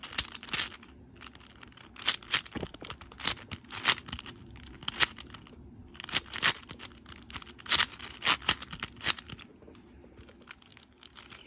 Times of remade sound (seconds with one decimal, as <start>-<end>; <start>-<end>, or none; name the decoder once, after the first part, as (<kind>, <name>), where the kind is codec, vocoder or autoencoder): 0.0-4.7 (vocoder, BigVGAN v2); 5.8-6.7; 9.5-10.1; 10.7-11.5